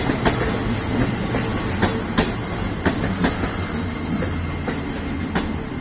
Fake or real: real